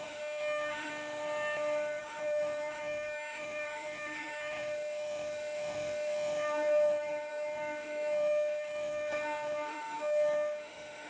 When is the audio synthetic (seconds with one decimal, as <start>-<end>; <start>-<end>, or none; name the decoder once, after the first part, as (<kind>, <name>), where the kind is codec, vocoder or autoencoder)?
0.0-0.9 (autoencoder, DAC-VAE); 2.0-11.1